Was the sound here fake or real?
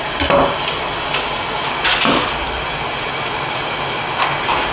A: real